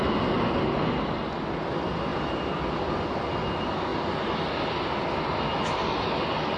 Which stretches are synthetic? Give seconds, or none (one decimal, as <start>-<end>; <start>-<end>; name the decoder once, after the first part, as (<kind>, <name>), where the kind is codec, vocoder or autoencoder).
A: 2.1-3.5 (vocoder, BigVGAN v2); 3.9-5.4